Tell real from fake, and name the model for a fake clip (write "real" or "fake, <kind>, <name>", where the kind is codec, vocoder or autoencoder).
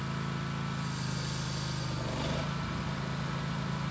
real